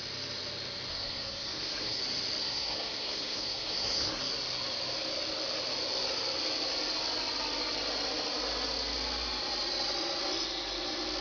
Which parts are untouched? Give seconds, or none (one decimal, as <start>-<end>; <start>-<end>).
0.0-0.9; 2.0-2.4; 4.2-11.2